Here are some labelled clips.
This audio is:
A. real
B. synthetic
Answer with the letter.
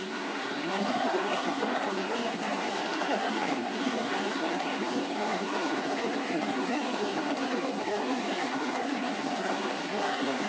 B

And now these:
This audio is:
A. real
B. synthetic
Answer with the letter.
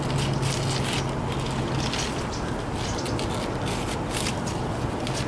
A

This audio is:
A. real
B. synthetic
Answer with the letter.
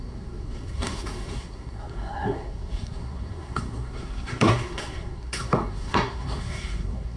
B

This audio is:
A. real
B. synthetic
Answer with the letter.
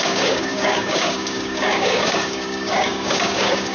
B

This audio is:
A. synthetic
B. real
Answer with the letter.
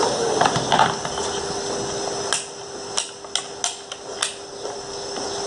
B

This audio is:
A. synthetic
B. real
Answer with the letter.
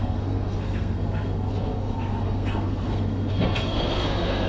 A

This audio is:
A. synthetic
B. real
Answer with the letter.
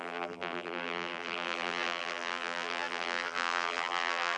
A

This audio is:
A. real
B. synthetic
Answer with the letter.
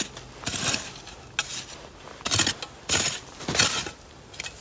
A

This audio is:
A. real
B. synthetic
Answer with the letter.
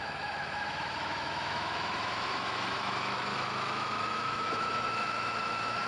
B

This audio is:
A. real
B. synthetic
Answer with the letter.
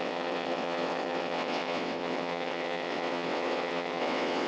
B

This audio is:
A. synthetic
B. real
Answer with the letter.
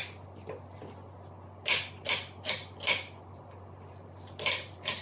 B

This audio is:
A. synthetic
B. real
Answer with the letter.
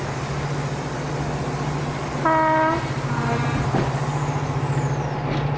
B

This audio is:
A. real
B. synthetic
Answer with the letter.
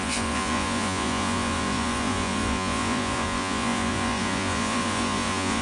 B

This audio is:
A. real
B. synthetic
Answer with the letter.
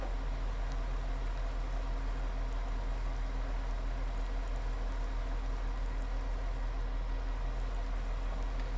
A